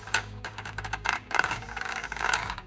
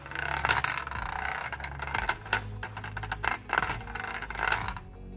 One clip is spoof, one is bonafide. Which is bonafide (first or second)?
second